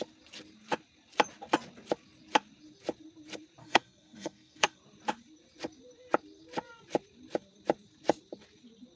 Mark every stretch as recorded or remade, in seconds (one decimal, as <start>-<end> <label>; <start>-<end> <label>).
0.0-3.6 recorded; 3.6-4.8 remade; 4.8-9.0 recorded